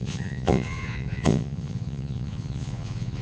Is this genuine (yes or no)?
no